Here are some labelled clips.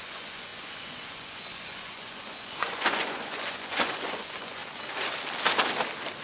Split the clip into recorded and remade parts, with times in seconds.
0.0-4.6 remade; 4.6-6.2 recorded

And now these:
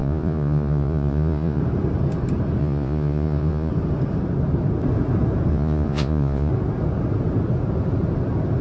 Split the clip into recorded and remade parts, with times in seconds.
0.0-1.6 remade; 1.6-2.6 recorded; 2.6-3.7 remade; 3.7-5.5 recorded; 5.5-6.5 remade; 6.5-8.6 recorded

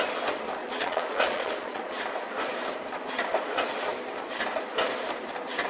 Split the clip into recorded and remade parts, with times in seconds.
0.0-0.6 recorded; 0.6-2.0 remade; 2.0-5.7 recorded

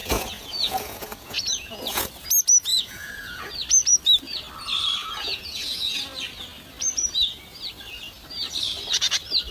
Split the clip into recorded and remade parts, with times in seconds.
0.0-2.1 remade; 2.1-2.7 recorded; 2.7-3.5 remade; 3.5-5.0 recorded; 5.0-6.0 remade; 6.0-9.5 recorded

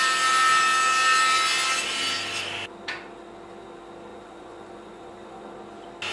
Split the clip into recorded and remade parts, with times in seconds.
0.0-4.1 recorded; 4.1-5.4 remade; 5.4-6.1 recorded